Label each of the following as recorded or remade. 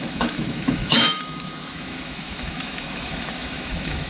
remade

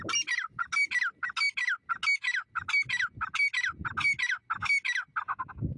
recorded